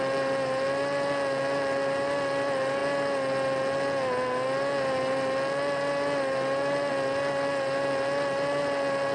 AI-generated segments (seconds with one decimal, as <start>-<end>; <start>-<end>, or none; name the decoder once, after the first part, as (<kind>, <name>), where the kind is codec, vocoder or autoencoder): none